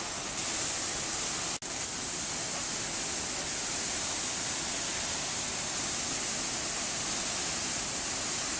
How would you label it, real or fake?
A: real